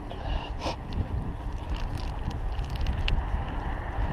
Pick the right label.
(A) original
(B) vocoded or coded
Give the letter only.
A